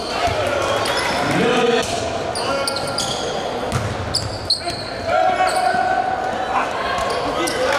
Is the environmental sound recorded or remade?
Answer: recorded